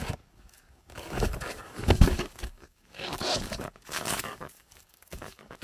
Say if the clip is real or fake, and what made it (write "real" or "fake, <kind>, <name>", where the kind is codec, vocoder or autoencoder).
fake, codec, DAC